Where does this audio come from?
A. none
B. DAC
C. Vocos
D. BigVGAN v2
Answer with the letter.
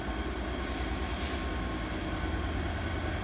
A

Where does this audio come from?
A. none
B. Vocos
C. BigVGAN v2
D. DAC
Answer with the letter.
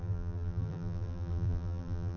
C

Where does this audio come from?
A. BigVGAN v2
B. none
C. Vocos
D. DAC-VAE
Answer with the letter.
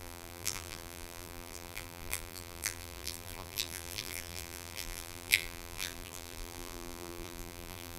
A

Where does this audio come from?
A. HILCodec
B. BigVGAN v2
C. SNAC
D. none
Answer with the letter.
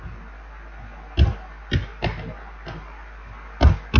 D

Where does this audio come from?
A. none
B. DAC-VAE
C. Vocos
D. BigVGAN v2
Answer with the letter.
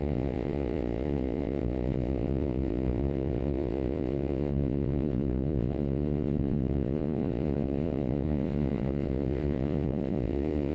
C